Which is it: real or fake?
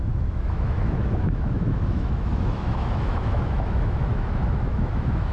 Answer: fake